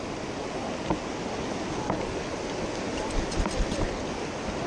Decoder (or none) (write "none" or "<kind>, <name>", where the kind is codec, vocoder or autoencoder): none